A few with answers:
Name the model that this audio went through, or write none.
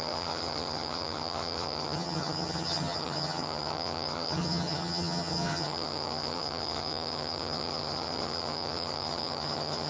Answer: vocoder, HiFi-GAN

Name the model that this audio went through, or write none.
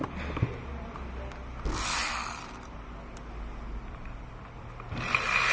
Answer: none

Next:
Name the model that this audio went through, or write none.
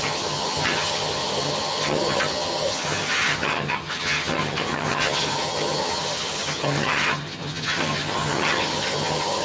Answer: vocoder, HiFi-GAN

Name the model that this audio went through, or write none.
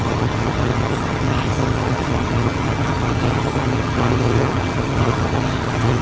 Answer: vocoder, HiFi-GAN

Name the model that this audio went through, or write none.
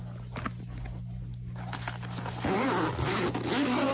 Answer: none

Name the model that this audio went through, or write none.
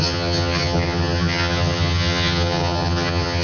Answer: vocoder, HiFi-GAN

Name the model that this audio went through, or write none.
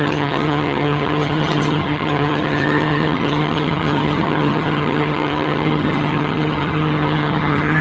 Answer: vocoder, HiFi-GAN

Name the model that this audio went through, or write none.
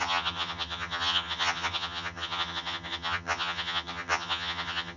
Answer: vocoder, HiFi-GAN